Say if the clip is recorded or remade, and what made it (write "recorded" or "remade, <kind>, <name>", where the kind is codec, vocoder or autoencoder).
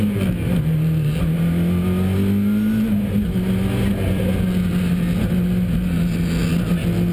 recorded